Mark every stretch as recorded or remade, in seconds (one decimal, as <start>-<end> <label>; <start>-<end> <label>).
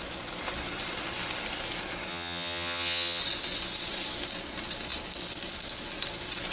0.0-2.1 recorded; 2.1-3.2 remade; 3.2-6.5 recorded